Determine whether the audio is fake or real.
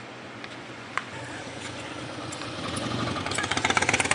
fake